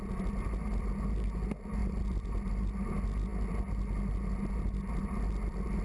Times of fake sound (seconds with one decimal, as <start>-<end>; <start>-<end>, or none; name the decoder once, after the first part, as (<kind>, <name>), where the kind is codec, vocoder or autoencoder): 1.8-2.5 (vocoder, BigVGAN v2)